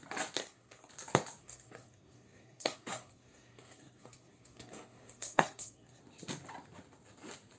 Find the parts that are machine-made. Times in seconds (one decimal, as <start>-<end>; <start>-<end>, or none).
0.4-0.9; 1.4-6.0